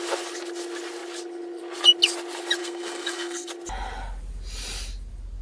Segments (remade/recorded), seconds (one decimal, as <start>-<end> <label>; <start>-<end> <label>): 0.0-2.6 recorded; 2.6-3.5 remade; 3.5-5.4 recorded